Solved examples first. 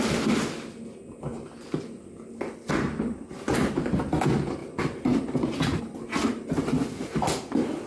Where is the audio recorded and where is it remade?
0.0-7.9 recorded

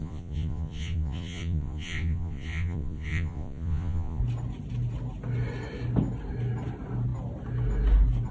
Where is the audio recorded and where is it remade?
0.0-4.2 remade; 4.2-8.3 recorded

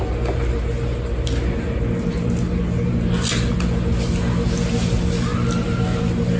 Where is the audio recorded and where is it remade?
0.0-6.4 recorded

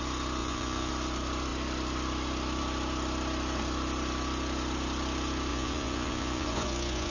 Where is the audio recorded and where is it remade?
0.0-0.4 recorded; 0.4-0.9 remade; 0.9-5.5 recorded; 5.5-7.1 remade

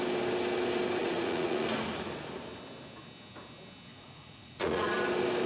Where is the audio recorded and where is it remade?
0.0-1.0 recorded; 1.0-2.0 remade; 2.0-3.9 recorded; 3.9-4.9 remade; 4.9-5.5 recorded

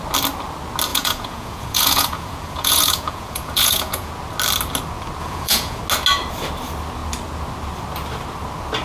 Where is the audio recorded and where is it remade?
0.0-0.9 recorded; 0.9-4.1 remade; 4.1-5.2 recorded; 5.2-5.8 remade; 5.8-8.8 recorded

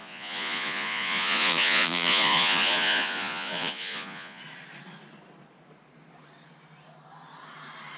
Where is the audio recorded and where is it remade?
0.0-4.4 remade; 4.4-8.0 recorded